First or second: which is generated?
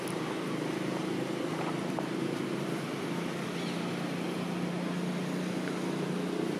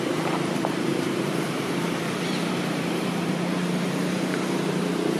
second